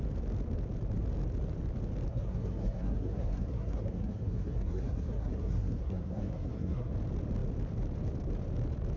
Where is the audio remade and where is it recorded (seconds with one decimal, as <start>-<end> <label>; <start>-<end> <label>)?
0.0-2.1 recorded; 2.1-6.9 remade; 6.9-9.0 recorded